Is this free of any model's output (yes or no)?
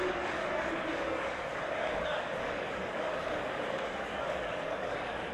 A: no